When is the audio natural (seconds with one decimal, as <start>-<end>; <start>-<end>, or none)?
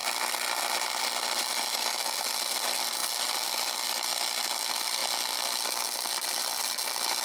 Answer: 0.0-7.2